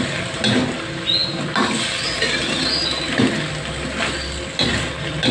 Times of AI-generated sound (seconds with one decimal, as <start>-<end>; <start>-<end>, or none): none